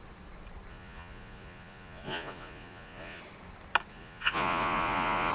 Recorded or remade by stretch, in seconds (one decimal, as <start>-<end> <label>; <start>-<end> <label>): 0.0-0.7 recorded; 0.7-3.2 remade; 3.2-3.9 recorded; 3.9-5.3 remade